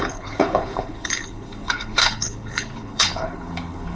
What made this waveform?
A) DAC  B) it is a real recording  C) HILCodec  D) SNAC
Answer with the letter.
C